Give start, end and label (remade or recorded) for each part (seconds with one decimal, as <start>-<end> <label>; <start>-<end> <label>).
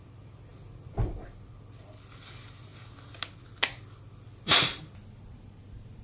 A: 0.0-6.0 recorded